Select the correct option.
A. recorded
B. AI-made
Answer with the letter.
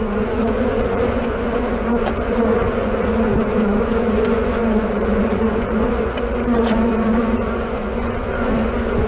B